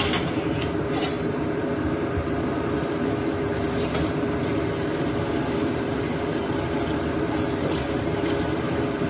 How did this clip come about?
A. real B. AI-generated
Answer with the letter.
B